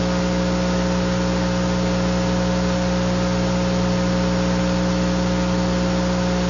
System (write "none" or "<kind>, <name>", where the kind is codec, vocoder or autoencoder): none